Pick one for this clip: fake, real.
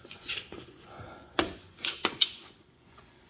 fake